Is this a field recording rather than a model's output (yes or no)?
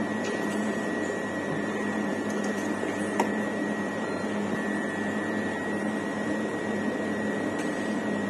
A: no